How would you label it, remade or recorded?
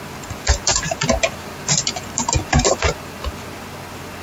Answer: recorded